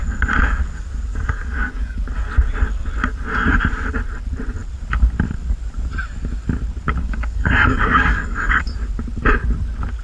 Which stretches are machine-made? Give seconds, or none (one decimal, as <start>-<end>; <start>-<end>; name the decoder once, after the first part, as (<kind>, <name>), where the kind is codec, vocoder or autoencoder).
1.1-2.0 (codec, DAC); 7.0-8.6